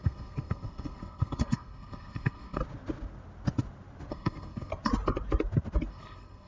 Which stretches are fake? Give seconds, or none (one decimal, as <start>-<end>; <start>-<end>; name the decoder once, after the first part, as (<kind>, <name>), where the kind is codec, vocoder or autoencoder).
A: 0.0-2.6 (codec, SNAC); 4.1-4.7; 5.9-6.5